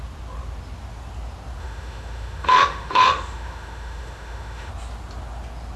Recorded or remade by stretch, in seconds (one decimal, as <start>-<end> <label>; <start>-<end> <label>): 0.0-1.6 recorded; 1.6-4.7 remade; 4.7-5.8 recorded